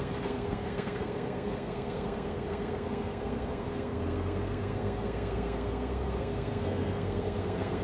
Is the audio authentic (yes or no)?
no